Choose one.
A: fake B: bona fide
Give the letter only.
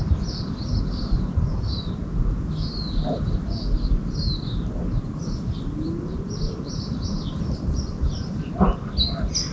B